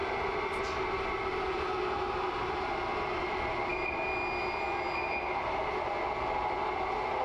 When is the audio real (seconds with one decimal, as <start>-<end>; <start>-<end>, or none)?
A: 0.0-7.2